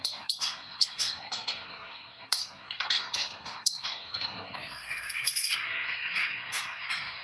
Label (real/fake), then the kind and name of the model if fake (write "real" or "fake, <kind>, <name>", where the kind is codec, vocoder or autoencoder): fake, codec, SNAC